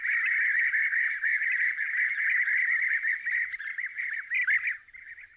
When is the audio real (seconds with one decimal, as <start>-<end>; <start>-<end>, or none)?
0.0-5.4